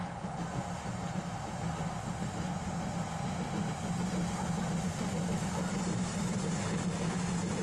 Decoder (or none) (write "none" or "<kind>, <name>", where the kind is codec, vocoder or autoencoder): none